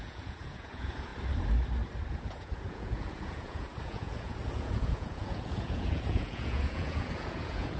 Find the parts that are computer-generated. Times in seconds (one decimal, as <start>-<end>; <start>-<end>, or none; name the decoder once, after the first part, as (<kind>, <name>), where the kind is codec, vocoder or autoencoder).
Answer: 0.0-1.1 (vocoder, Vocos); 2.1-7.8